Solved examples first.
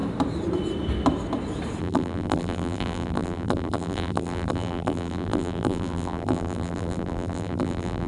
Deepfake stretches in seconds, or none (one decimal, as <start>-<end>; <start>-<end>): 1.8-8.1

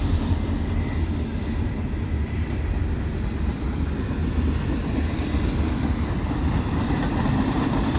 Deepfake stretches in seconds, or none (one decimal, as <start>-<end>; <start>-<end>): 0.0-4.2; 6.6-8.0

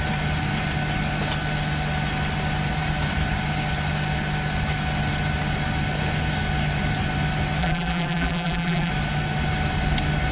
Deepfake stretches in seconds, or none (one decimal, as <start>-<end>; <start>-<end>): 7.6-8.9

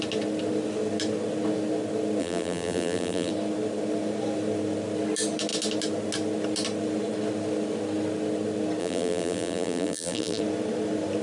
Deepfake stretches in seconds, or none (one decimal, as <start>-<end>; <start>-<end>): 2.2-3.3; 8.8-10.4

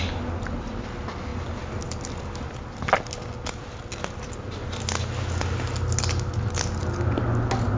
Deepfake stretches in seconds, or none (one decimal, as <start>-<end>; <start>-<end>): none